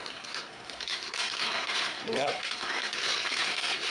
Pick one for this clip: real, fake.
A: fake